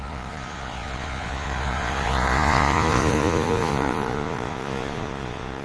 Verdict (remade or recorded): remade